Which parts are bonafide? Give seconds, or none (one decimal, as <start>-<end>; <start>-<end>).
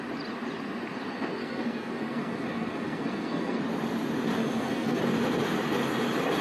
0.0-1.4; 3.6-4.4; 5.0-6.4